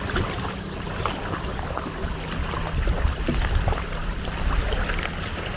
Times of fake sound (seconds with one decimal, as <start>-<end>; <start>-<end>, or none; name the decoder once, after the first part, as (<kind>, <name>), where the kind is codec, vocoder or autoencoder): none